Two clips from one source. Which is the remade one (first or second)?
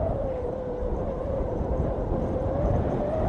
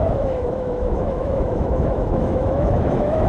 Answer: second